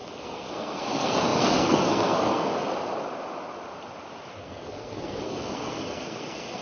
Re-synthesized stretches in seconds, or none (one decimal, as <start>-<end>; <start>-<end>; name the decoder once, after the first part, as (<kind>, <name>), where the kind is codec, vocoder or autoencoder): 0.0-2.5 (codec, SNAC); 4.3-6.6